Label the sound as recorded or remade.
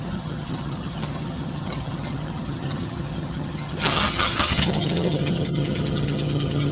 remade